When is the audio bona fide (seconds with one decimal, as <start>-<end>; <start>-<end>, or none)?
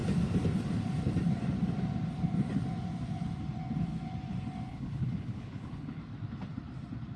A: 0.0-4.7; 6.0-7.2